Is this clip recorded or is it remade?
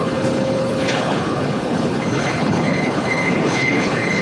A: remade